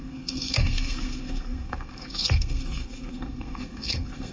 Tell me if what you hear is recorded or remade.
remade